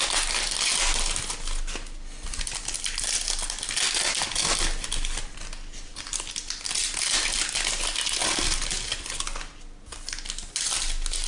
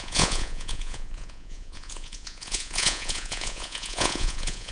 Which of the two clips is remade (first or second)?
second